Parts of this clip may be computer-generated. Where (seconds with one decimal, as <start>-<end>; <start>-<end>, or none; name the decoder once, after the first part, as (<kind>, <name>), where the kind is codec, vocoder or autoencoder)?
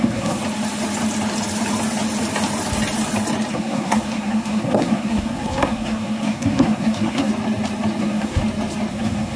0.0-0.4 (codec, SNAC); 3.5-7.3; 8.0-8.4; 8.9-9.4